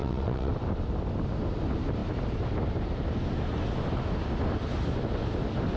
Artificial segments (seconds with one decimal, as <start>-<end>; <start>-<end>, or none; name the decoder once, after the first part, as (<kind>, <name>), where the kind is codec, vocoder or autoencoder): 0.0-0.5 (vocoder, WaveNeXt)